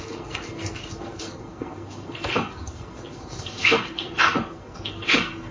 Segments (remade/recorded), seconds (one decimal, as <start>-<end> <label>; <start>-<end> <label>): 0.0-5.5 remade